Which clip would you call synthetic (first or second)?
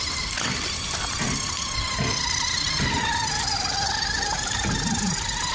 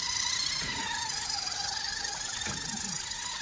second